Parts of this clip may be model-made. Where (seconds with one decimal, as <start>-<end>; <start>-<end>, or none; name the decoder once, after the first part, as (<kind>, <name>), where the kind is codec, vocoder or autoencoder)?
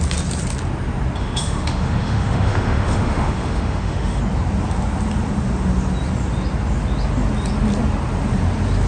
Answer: 1.2-4.2 (autoencoder, DAC-VAE)